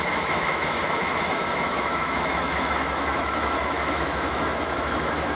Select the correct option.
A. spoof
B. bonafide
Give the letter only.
A